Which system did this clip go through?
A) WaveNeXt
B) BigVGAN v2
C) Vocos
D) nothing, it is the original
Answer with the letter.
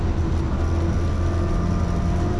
D